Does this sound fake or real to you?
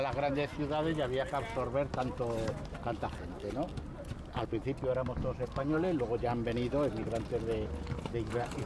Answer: real